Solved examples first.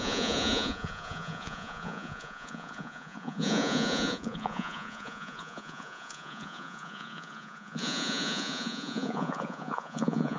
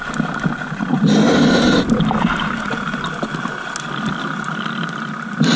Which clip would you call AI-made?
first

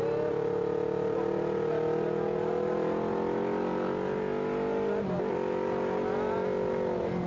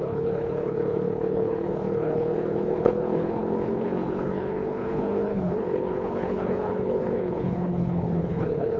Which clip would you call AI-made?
second